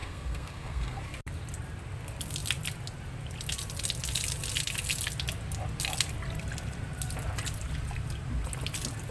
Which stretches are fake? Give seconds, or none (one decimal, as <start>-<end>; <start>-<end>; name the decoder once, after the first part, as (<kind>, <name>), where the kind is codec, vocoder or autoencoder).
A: 0.0-1.0 (codec, SNAC)